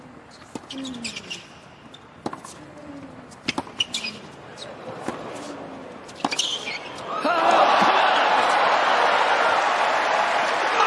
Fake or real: real